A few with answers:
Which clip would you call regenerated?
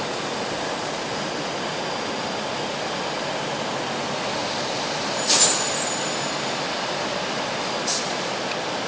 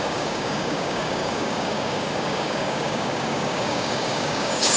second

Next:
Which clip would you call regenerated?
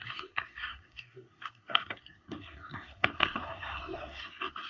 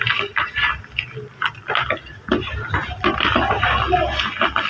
first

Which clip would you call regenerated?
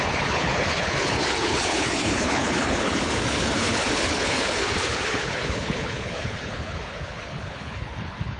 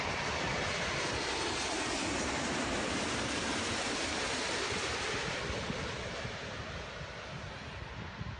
first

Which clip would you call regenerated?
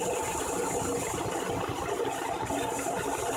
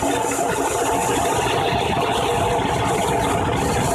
first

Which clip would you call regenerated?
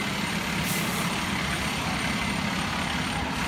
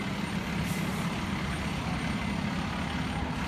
first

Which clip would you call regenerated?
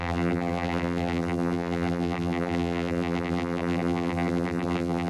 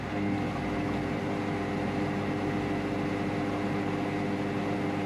first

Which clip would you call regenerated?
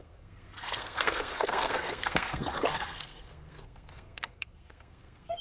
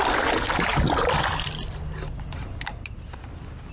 first